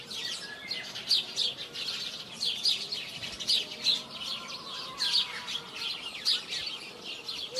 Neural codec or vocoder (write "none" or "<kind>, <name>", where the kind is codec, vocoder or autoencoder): none